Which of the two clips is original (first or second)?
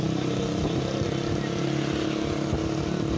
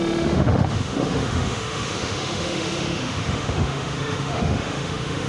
first